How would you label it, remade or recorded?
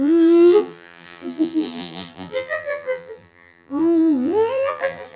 remade